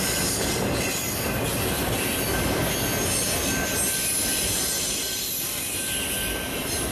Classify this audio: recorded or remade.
recorded